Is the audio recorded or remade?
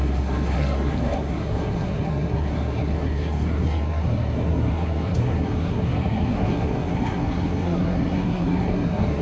remade